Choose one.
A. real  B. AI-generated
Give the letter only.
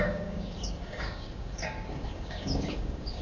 B